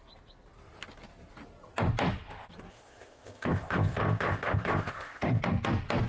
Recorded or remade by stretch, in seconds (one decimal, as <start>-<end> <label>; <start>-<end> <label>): 0.0-2.7 recorded; 2.7-5.4 remade; 5.4-6.1 recorded